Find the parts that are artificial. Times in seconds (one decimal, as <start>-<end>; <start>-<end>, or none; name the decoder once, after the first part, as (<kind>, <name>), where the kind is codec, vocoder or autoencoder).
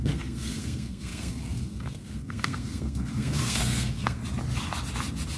0.0-4.2 (codec, SNAC)